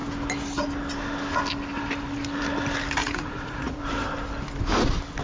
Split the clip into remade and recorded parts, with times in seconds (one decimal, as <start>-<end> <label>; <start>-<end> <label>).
0.0-3.0 recorded; 3.0-3.8 remade; 3.8-5.2 recorded

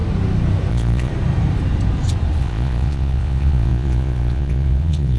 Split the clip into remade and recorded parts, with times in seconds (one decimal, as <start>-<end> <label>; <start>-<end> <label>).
0.0-0.7 recorded; 0.7-1.1 remade; 1.1-2.4 recorded; 2.4-5.2 remade

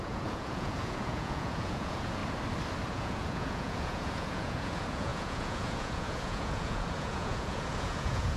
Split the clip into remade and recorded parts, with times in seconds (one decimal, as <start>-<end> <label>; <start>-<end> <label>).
0.0-2.2 remade; 2.2-2.9 recorded; 2.9-8.4 remade

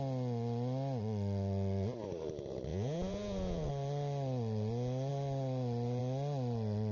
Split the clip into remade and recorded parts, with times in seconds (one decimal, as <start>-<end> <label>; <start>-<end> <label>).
0.0-2.7 recorded; 2.7-3.7 remade; 3.7-6.9 recorded

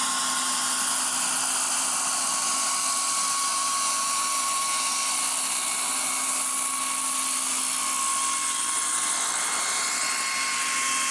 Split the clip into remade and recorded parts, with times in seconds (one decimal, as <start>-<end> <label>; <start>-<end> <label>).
0.0-3.5 recorded; 3.5-4.6 remade; 4.6-11.1 recorded